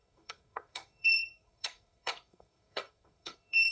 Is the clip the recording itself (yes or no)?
no